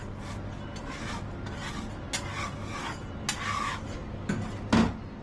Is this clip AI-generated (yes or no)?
no